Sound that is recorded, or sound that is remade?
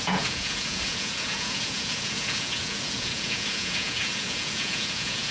remade